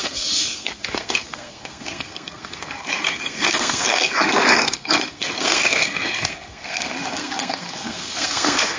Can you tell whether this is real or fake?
fake